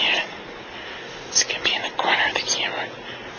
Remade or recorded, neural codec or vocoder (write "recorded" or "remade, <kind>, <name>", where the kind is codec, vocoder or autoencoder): recorded